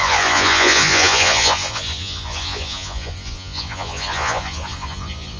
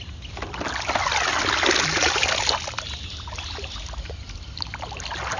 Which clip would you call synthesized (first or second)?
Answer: first